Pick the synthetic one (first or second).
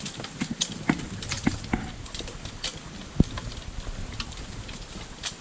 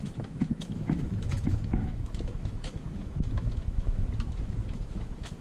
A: second